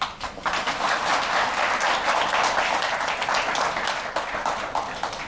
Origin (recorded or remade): recorded